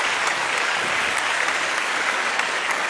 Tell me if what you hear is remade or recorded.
remade